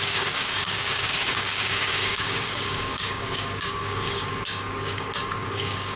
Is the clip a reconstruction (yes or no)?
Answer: yes